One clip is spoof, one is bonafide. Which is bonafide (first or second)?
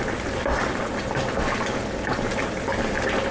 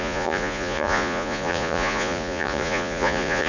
first